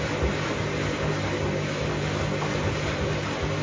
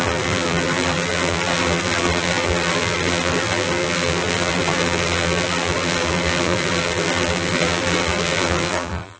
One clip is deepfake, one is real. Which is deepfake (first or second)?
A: second